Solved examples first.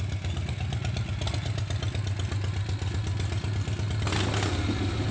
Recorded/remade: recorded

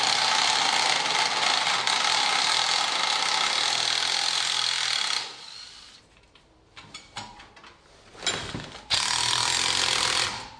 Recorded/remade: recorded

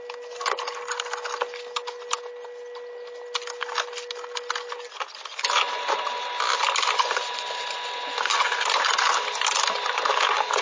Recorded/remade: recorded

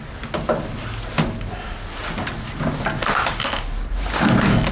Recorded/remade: recorded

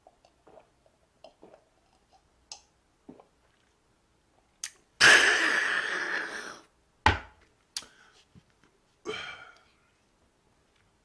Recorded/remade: recorded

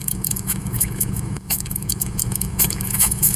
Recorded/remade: remade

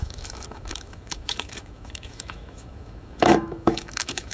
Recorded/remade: remade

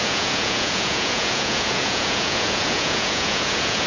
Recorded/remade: remade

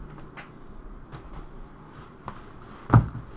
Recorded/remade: recorded